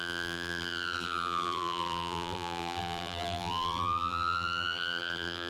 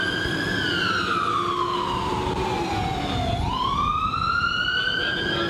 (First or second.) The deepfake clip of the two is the first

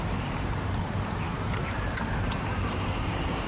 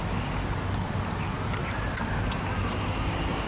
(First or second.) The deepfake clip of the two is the first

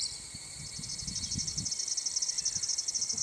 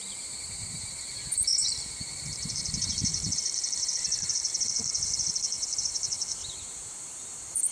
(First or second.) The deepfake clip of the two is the second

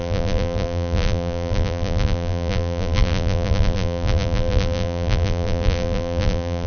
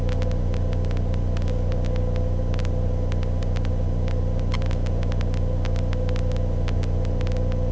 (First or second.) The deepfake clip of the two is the first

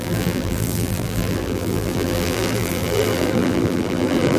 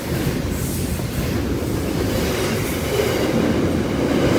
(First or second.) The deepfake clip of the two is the first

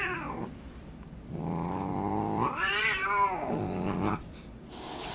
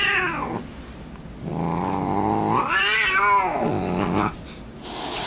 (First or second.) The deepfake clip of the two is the first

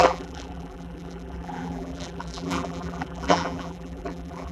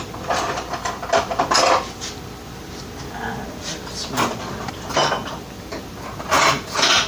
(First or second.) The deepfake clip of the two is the first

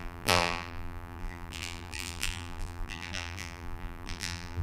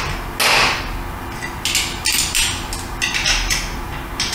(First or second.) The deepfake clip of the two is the first